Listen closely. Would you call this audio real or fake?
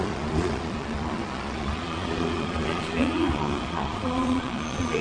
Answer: fake